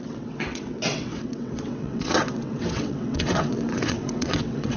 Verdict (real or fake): fake